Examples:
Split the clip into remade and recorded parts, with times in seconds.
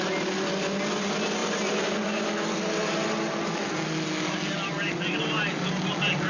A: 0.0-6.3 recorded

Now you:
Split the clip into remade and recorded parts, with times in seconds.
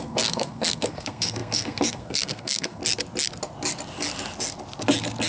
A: 0.0-2.8 remade; 2.8-5.3 recorded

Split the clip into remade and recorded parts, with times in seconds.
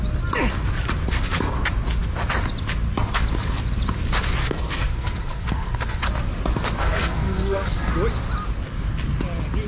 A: 0.0-4.4 recorded; 4.4-6.0 remade; 6.0-6.8 recorded; 6.8-7.9 remade; 7.9-9.7 recorded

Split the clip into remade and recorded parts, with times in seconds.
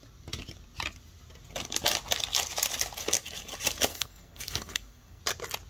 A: 0.0-3.9 recorded; 3.9-5.2 remade; 5.2-5.7 recorded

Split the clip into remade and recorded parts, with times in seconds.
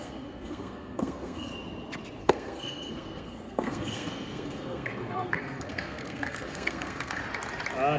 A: 0.0-1.5 remade; 1.5-2.2 recorded; 2.2-7.2 remade; 7.2-8.0 recorded